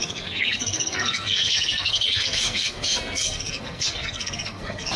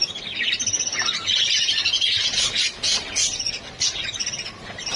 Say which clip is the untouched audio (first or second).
second